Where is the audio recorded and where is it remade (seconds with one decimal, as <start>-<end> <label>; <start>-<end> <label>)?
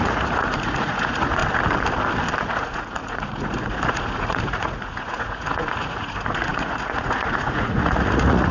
0.0-1.4 remade; 1.4-2.4 recorded; 2.4-8.5 remade